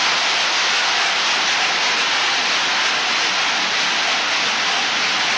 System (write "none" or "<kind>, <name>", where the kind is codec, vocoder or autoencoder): none